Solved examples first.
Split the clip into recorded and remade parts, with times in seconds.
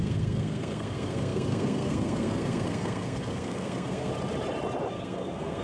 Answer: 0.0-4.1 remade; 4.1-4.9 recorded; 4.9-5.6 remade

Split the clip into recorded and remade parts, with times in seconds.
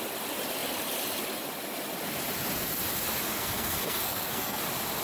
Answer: 0.0-3.3 recorded; 3.3-4.6 remade; 4.6-5.0 recorded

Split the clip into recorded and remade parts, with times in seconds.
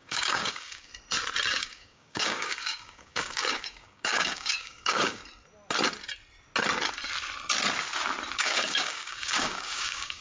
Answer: 0.0-0.9 remade; 0.9-1.5 recorded; 1.5-5.2 remade; 5.2-8.4 recorded; 8.4-10.2 remade